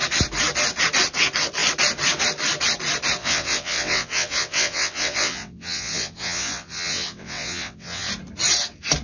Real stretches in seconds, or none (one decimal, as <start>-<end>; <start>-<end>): 0.0-3.2; 8.1-9.0